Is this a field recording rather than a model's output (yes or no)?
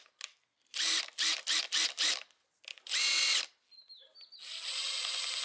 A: yes